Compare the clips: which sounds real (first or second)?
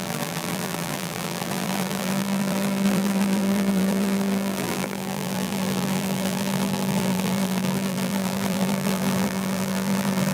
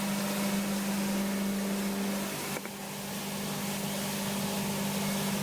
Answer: second